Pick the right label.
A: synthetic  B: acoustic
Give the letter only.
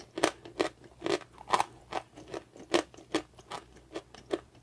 B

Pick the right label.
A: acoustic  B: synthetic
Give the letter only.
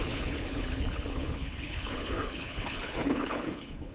B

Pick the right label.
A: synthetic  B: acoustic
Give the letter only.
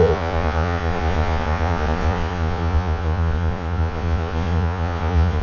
A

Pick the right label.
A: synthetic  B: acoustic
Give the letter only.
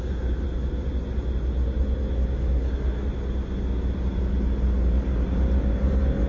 B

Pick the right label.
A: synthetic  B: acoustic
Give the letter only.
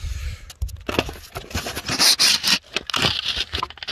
B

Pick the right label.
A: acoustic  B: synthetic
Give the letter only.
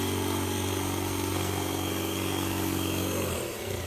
B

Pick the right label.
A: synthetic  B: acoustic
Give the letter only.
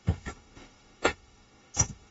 A